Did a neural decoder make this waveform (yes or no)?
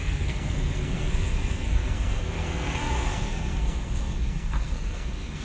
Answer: yes